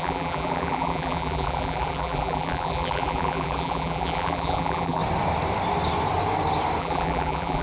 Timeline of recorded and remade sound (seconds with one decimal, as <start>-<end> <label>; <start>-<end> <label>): 0.0-5.0 remade; 5.0-6.8 recorded; 6.8-7.6 remade